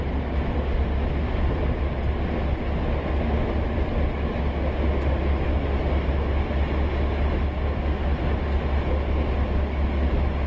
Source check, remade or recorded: recorded